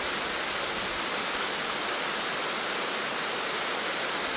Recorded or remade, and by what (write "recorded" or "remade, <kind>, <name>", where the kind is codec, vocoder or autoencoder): recorded